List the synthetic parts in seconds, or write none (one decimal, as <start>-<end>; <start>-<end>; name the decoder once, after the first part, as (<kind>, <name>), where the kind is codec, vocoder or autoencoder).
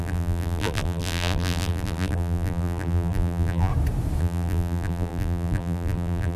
0.0-3.7 (vocoder, BigVGAN v2); 4.2-6.4